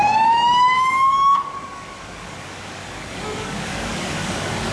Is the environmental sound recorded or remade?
remade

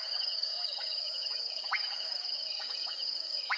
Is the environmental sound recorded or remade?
remade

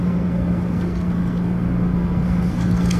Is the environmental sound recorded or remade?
remade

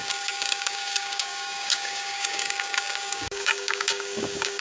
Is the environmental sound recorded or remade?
remade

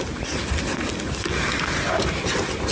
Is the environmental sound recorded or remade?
recorded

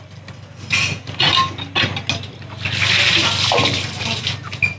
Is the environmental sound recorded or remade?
recorded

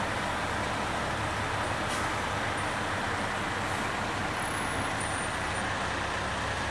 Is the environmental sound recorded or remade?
recorded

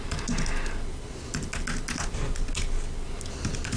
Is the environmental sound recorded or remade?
recorded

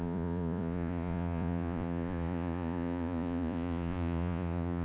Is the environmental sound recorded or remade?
remade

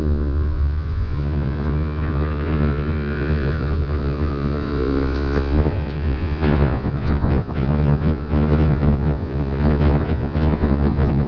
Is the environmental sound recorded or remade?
remade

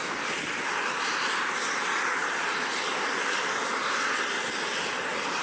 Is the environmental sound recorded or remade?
recorded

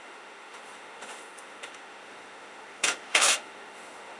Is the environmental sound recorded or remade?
remade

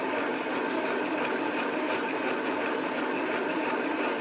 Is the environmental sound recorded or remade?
remade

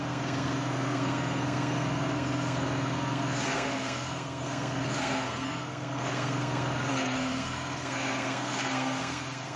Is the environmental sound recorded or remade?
remade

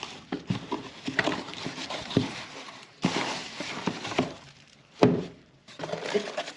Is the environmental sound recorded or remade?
remade